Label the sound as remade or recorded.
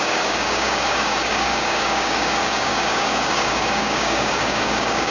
remade